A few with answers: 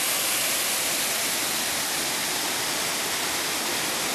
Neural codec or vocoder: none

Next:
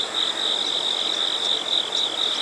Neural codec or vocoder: none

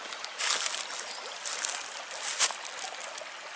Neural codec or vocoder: none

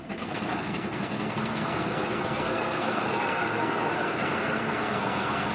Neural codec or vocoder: codec, SNAC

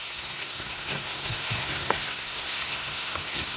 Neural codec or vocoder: codec, SNAC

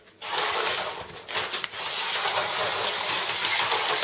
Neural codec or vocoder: none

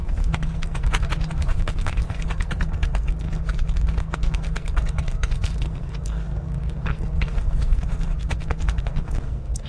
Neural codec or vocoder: codec, SNAC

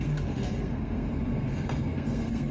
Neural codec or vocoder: codec, SNAC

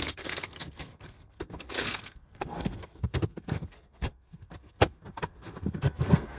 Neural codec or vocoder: codec, SNAC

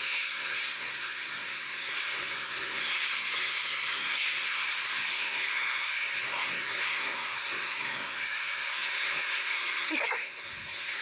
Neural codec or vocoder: codec, SNAC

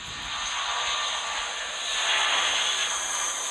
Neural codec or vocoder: none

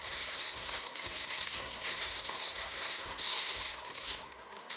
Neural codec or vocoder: codec, SNAC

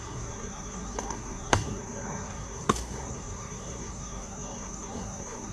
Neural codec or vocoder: codec, SNAC